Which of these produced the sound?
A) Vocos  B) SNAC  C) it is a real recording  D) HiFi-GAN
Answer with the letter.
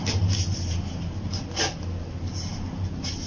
C